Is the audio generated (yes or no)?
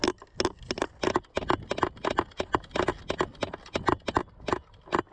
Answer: no